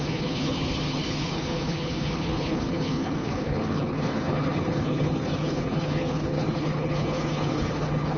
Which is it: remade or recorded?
remade